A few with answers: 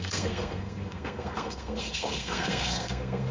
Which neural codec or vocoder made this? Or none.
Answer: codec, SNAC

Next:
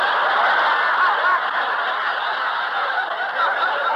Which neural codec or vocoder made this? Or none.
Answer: none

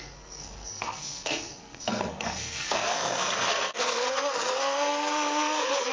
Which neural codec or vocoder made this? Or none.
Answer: codec, SNAC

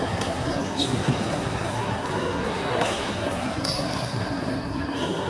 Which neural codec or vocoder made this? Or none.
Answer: codec, SNAC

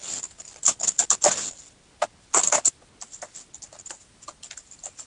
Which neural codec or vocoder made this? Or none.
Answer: none